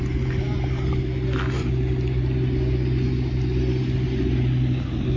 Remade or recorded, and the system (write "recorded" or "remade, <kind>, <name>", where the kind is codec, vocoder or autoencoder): recorded